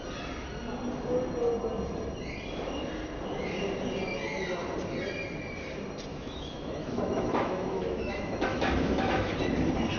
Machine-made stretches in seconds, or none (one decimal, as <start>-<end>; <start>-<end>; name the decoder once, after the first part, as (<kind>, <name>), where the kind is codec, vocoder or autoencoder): 6.1-9.3 (autoencoder, DAC-VAE)

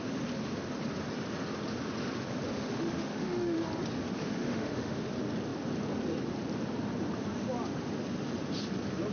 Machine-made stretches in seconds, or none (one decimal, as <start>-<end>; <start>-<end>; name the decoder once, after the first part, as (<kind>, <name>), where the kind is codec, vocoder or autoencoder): 2.5-3.6 (autoencoder, DAC-VAE); 4.2-5.0